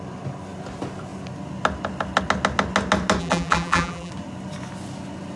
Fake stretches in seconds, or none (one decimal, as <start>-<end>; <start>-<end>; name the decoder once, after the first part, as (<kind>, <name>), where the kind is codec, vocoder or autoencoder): 3.2-4.1 (vocoder, BigVGAN v2)